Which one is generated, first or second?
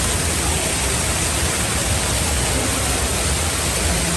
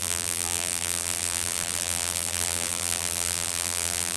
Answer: second